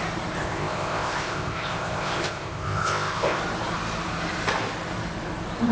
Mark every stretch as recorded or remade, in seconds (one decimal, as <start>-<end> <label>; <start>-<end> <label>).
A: 0.0-0.4 recorded; 0.4-3.4 remade; 3.4-5.7 recorded